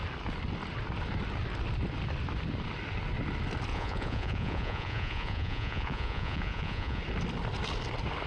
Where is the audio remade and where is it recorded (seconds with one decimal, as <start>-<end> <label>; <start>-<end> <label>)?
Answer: 0.0-3.7 recorded; 3.7-7.0 remade; 7.0-8.3 recorded